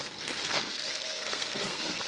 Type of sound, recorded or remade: remade